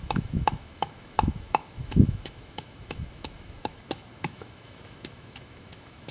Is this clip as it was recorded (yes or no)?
no